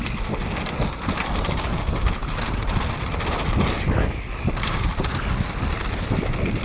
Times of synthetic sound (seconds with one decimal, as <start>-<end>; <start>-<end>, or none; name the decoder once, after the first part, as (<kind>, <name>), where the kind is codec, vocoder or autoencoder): none